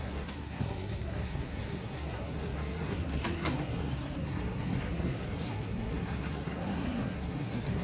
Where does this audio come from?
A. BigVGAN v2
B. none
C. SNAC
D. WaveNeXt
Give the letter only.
C